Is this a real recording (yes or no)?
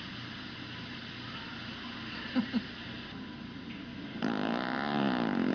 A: yes